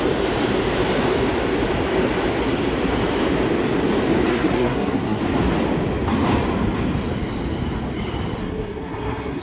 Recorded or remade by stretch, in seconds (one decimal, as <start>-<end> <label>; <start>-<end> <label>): 0.0-4.3 recorded; 4.3-5.2 remade; 5.2-8.4 recorded; 8.4-9.4 remade